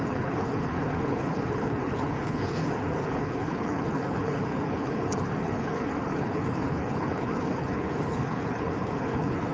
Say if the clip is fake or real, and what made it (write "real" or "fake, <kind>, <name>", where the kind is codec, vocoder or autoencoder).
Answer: fake, codec, HILCodec